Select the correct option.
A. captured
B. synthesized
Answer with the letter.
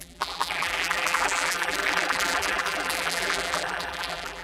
B